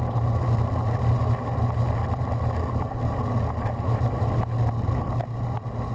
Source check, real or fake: real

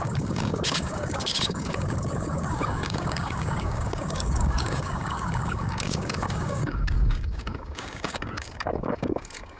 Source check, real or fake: fake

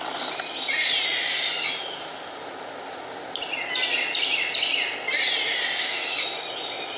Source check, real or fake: real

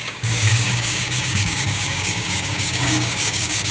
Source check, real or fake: fake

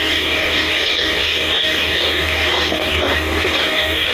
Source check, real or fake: fake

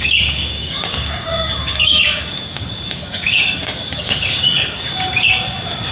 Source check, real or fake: fake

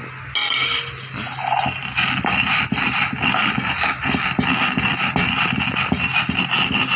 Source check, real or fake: real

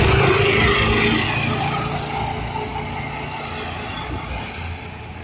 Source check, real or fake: real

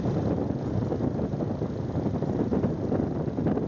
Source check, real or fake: real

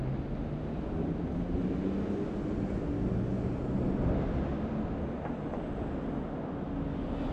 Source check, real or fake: real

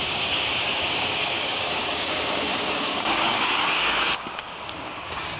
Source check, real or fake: fake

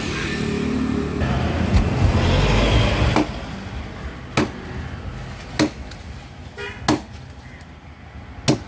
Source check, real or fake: real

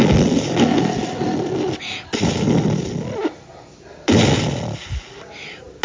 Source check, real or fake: real